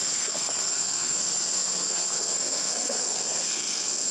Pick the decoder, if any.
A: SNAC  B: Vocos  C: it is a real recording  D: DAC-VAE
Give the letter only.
A